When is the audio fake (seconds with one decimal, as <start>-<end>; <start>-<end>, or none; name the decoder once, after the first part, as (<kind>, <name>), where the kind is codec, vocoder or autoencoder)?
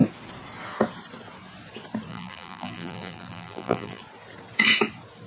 2.1-4.0 (vocoder, BigVGAN v2)